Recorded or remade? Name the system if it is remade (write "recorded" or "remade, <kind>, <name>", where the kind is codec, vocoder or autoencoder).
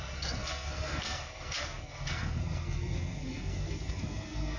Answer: remade, codec, SNAC